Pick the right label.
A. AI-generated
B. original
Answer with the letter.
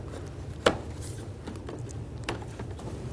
B